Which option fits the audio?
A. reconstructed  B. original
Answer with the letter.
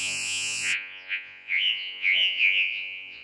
A